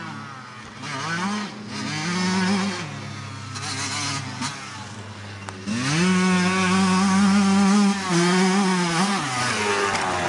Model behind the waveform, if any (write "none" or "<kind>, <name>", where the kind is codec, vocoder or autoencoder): none